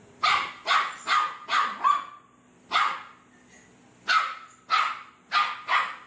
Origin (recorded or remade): recorded